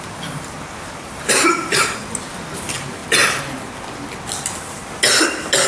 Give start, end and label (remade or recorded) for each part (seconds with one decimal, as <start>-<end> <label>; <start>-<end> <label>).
0.0-2.0 remade; 2.0-2.5 recorded; 2.5-3.0 remade; 3.0-5.7 recorded